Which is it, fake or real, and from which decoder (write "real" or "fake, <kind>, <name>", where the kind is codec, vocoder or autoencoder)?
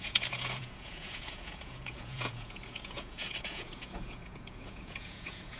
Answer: fake, vocoder, Vocos